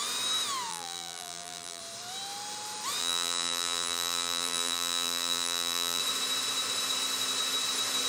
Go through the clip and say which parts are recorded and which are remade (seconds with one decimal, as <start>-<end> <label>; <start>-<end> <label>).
0.0-0.7 recorded; 0.7-1.8 remade; 1.8-3.0 recorded; 3.0-6.0 remade; 6.0-8.1 recorded

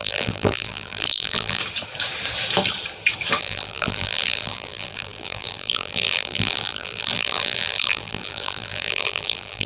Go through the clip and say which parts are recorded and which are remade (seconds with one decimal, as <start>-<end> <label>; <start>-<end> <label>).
0.0-1.6 remade; 1.6-3.4 recorded; 3.4-9.7 remade

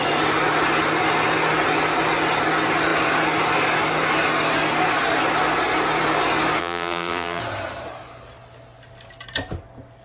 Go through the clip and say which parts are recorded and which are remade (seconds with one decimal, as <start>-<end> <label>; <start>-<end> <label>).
0.0-6.6 recorded; 6.6-7.4 remade; 7.4-10.0 recorded